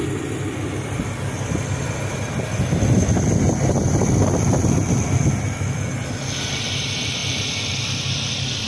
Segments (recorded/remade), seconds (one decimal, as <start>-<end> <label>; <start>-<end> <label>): 0.0-8.7 recorded